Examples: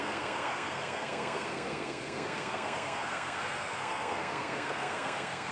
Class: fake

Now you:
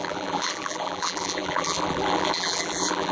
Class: fake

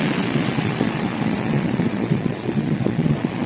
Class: fake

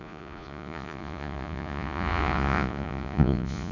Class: fake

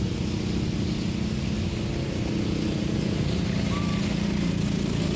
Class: real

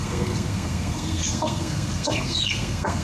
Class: fake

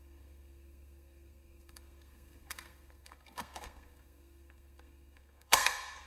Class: fake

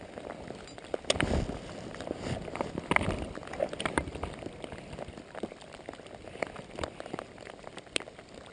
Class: real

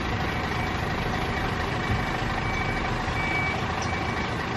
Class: real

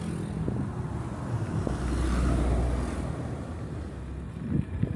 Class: real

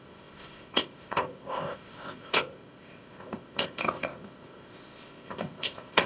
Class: fake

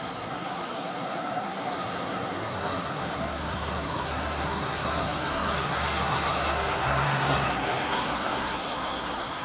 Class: fake